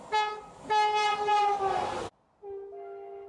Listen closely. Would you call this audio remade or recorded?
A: recorded